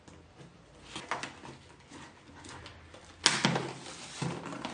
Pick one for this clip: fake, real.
real